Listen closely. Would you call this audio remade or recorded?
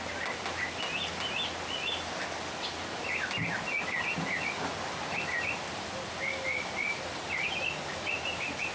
recorded